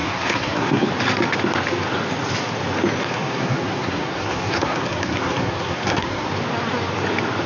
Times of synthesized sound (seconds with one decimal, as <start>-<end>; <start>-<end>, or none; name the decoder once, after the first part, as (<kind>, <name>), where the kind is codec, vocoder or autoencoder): 0.0-0.9 (codec, SNAC); 3.0-6.3